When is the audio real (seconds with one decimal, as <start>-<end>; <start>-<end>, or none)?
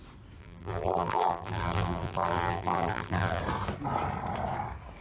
0.0-0.4; 3.4-5.0